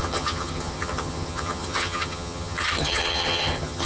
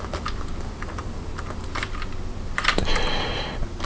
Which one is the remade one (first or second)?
first